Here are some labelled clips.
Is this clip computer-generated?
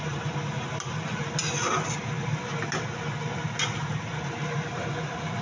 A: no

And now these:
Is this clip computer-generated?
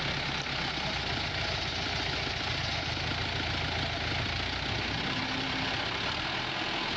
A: no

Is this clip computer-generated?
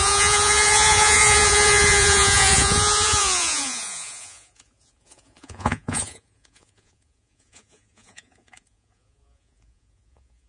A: yes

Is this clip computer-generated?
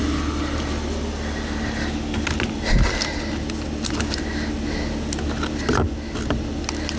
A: no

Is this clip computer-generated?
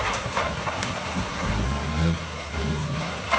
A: yes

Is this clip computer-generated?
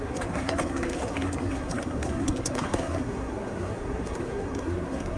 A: yes